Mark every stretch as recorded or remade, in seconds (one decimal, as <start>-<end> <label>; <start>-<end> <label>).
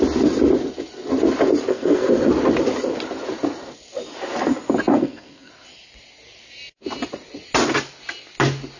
0.0-1.7 recorded; 1.7-2.3 remade; 2.3-4.9 recorded; 4.9-5.5 remade; 5.5-8.8 recorded